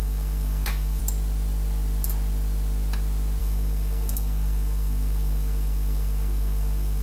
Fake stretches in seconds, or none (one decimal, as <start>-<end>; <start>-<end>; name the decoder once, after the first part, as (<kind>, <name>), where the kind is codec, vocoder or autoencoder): 0.0-1.0 (codec, SNAC); 3.4-7.0